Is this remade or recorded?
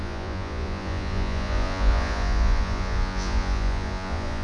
remade